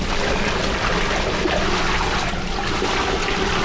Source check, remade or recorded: recorded